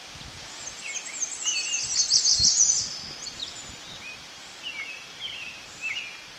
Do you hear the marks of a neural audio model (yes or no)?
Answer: no